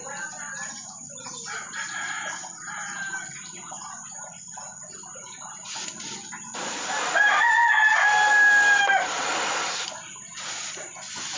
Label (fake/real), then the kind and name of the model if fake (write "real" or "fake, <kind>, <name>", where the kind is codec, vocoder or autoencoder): real